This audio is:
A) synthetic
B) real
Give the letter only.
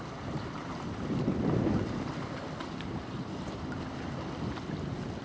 B